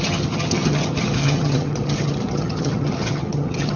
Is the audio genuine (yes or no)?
no